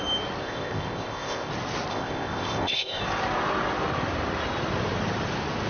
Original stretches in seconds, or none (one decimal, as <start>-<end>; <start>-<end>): 0.0-0.4; 1.5-1.9; 3.0-5.7